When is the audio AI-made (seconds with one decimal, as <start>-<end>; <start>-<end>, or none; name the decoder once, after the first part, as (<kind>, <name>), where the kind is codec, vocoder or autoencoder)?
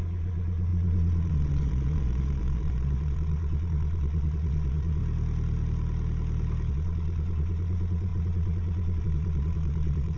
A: 0.0-5.0 (vocoder, Vocos); 6.7-10.2